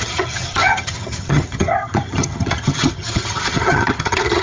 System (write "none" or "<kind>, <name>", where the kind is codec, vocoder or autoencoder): vocoder, HiFi-GAN